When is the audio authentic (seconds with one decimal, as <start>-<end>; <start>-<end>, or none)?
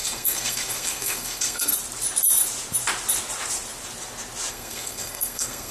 1.7-4.5